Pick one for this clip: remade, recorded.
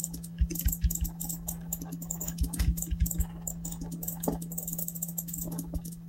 remade